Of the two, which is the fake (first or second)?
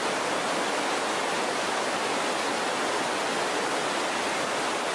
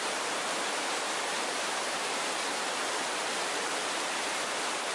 second